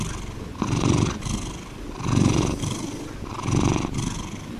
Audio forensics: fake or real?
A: real